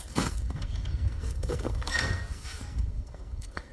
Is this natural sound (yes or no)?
no